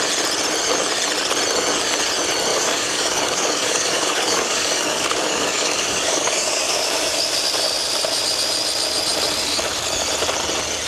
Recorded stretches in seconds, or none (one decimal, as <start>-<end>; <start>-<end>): 0.0-2.5; 7.2-10.9